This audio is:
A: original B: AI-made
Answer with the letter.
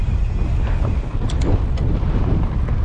A